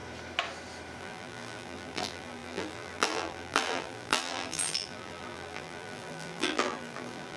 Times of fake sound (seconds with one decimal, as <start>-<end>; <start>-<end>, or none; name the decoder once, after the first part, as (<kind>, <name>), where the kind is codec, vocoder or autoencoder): 1.0-7.4 (vocoder, BigVGAN v2)